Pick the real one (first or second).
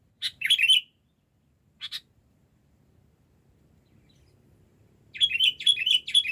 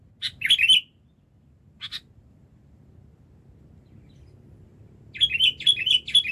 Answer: second